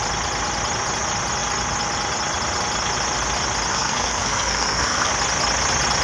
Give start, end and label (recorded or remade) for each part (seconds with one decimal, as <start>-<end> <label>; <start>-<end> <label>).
0.0-3.7 recorded; 3.7-5.1 remade; 5.1-6.0 recorded